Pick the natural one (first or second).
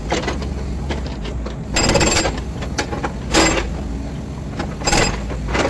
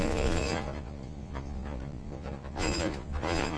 first